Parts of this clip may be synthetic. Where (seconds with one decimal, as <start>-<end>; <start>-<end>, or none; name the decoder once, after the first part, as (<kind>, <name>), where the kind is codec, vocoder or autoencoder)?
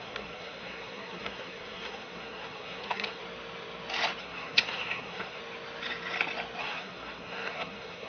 0.0-3.2 (codec, SNAC); 4.2-5.4; 6.6-8.1